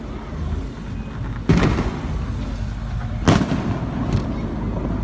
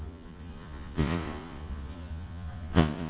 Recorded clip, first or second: first